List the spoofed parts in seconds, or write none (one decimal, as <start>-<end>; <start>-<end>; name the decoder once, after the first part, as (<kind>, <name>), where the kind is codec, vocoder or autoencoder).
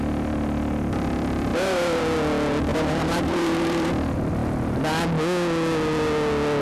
1.5-2.0 (vocoder, BigVGAN v2); 2.7-3.9